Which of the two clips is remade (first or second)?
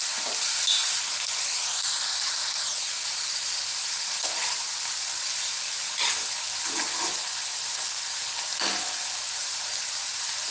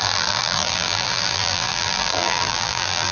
second